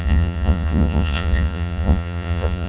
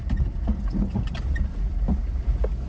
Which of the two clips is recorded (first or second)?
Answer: second